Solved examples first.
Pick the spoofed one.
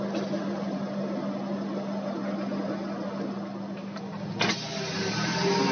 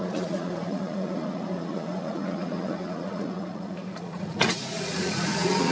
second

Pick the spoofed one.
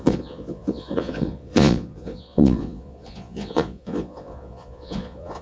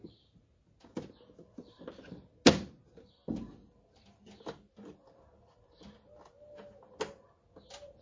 first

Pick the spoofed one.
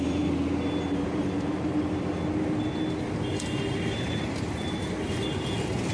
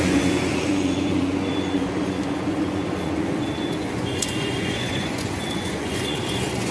second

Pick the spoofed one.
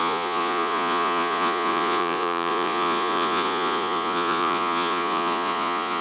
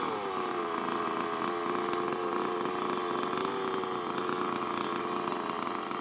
first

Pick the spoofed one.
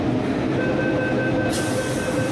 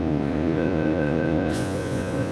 second